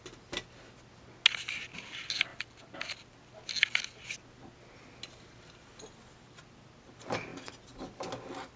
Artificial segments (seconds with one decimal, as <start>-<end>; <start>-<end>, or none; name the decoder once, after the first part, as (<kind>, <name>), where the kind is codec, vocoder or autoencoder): none